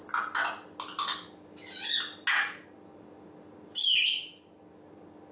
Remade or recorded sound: recorded